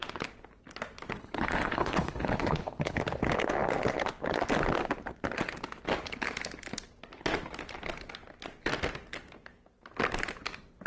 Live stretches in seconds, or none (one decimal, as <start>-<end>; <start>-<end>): 0.0-1.2; 3.0-10.9